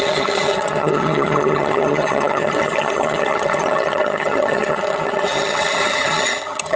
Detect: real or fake fake